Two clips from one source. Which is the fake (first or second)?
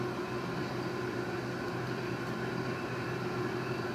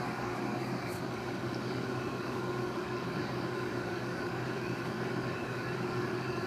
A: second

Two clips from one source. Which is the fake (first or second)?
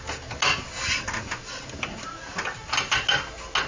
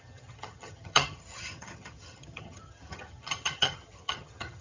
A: second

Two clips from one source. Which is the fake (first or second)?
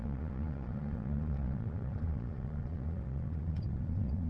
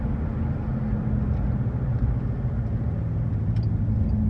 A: first